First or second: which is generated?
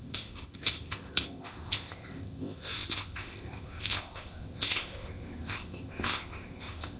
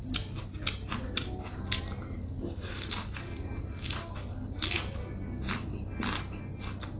first